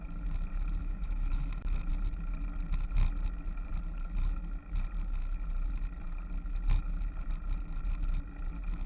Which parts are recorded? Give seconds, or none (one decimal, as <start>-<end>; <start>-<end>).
0.0-0.8; 1.4-8.9